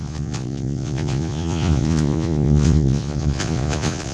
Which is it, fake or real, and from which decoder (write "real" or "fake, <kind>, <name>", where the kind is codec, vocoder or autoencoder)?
fake, vocoder, Vocos